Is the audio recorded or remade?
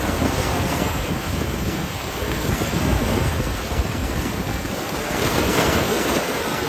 remade